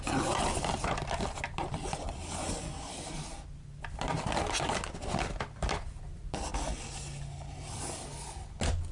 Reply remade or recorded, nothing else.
recorded